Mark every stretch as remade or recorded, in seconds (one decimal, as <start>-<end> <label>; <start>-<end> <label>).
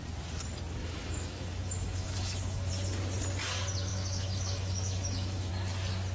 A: 0.0-0.8 recorded; 0.8-2.7 remade; 2.7-3.9 recorded; 3.9-5.5 remade; 5.5-6.1 recorded